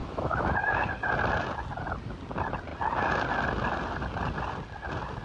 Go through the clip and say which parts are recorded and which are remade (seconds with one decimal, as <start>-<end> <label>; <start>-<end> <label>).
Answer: 0.0-0.9 remade; 0.9-5.2 recorded

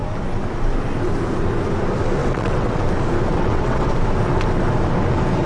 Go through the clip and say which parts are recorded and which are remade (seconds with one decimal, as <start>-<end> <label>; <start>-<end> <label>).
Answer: 0.0-2.2 recorded; 2.2-2.8 remade; 2.8-3.3 recorded; 3.3-3.9 remade; 3.9-5.5 recorded

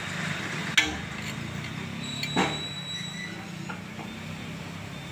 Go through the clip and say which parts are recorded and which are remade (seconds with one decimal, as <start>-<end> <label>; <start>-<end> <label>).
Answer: 0.0-5.1 recorded